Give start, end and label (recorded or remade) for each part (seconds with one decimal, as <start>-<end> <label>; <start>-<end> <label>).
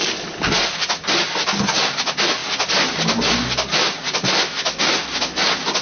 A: 0.0-5.8 recorded